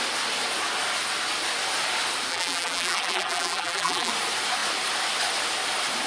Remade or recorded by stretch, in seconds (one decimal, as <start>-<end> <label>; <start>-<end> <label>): 0.0-2.3 recorded; 2.3-4.1 remade; 4.1-6.1 recorded